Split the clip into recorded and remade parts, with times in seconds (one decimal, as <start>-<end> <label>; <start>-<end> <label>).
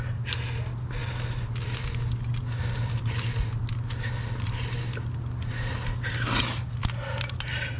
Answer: 0.0-7.8 recorded